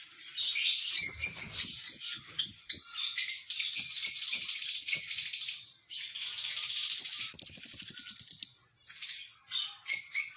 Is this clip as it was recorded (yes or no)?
yes